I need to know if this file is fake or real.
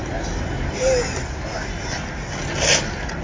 real